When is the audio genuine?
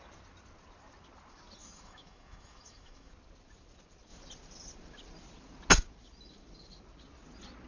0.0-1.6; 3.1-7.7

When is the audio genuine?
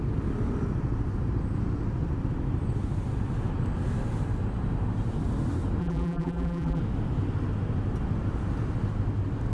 0.0-5.8; 6.8-9.5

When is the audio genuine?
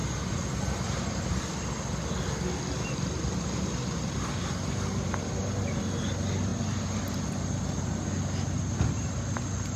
0.0-9.8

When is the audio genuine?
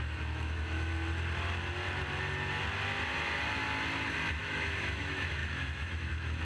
0.9-4.3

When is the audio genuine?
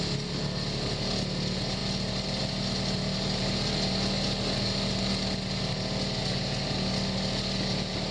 0.0-8.1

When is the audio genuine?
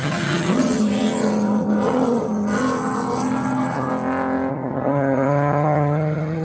3.9-4.5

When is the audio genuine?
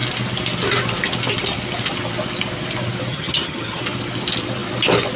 0.0-3.1; 3.8-5.2